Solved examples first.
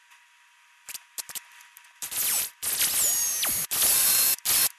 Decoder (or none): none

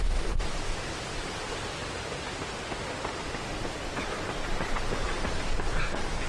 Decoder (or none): none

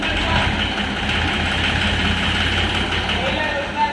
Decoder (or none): none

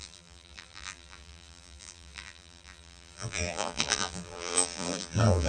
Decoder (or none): vocoder, BigVGAN v2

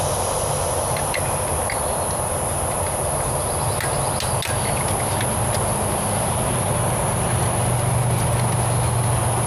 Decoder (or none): none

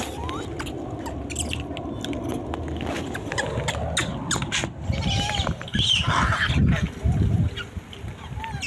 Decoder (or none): none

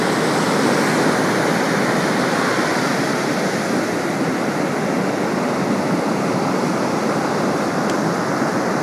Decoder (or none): none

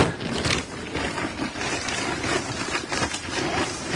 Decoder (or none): vocoder, BigVGAN v2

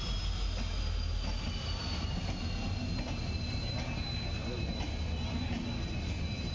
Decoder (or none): none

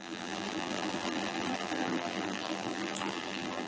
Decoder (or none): vocoder, BigVGAN v2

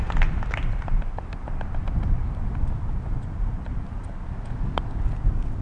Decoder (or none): none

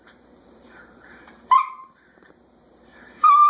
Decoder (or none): vocoder, BigVGAN v2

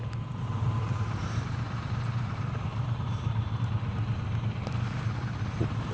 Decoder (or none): vocoder, BigVGAN v2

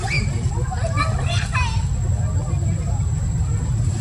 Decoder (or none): none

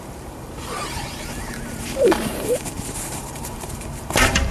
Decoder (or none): vocoder, BigVGAN v2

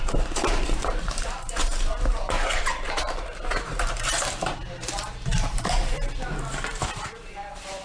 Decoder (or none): vocoder, BigVGAN v2